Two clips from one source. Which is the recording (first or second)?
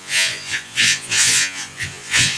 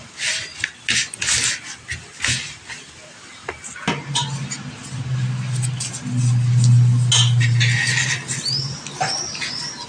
second